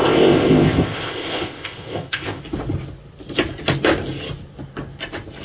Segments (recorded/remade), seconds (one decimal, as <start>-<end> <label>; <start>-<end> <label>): 0.0-2.4 remade; 2.4-5.4 recorded